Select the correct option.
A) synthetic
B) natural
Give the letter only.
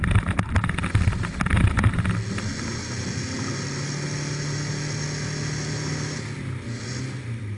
B